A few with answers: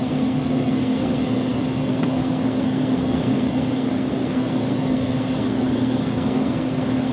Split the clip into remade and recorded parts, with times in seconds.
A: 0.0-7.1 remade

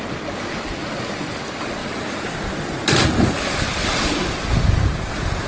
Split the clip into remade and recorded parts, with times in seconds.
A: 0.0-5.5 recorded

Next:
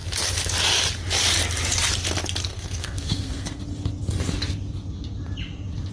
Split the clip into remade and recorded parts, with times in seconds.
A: 0.0-2.5 recorded; 2.5-3.6 remade; 3.6-5.9 recorded

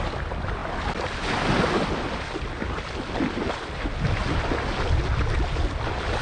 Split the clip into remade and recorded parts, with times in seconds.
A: 0.0-6.2 recorded

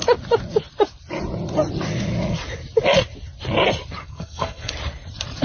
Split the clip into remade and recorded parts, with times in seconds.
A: 0.0-4.0 recorded; 4.0-4.7 remade; 4.7-5.4 recorded

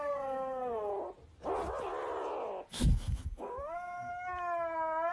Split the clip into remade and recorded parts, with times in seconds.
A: 0.0-0.9 remade; 0.9-2.7 recorded; 2.7-4.1 remade; 4.1-5.1 recorded